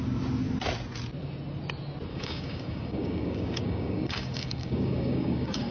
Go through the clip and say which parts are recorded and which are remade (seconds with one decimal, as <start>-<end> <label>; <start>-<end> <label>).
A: 0.0-2.1 recorded; 2.1-5.7 remade